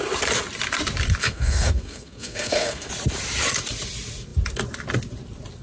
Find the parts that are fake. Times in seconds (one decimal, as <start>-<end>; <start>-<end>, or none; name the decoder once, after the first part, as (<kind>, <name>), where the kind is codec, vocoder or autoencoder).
1.2-2.9 (codec, SNAC)